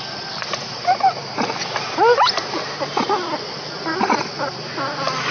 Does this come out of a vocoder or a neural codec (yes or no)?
no